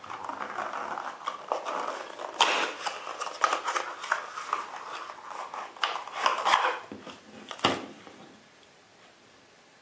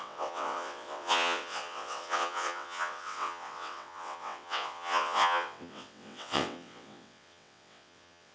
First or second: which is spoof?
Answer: second